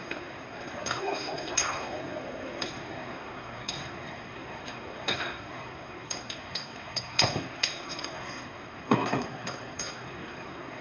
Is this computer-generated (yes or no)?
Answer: yes